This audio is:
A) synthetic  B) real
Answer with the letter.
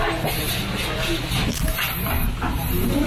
B